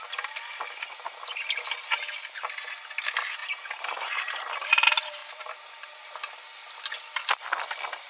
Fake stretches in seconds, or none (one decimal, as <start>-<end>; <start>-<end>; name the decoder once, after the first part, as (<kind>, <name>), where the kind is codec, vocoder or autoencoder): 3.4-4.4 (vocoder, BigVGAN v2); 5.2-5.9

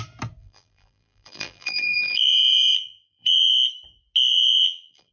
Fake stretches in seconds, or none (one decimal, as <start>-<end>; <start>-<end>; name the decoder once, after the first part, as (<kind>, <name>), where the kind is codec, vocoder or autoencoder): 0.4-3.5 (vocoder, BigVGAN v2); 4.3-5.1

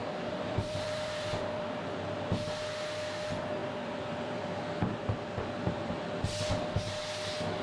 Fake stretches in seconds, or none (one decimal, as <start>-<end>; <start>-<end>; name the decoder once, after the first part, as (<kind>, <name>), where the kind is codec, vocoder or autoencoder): 0.0-2.0 (vocoder, BigVGAN v2); 3.6-5.9

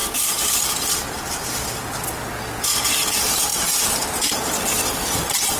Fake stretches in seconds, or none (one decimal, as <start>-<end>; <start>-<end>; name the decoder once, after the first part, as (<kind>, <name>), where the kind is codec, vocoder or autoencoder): 0.0-2.3 (vocoder, BigVGAN v2)

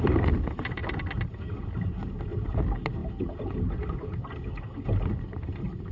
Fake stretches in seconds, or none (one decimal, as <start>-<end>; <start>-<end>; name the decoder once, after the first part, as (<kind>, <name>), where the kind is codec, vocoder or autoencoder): 3.0-3.7 (vocoder, BigVGAN v2)

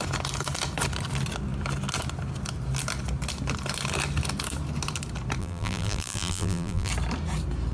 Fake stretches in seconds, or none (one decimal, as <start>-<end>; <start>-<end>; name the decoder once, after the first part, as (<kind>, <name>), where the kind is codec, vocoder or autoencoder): 5.4-6.9 (vocoder, BigVGAN v2)